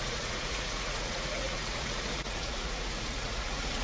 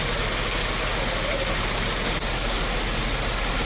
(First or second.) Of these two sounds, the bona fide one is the second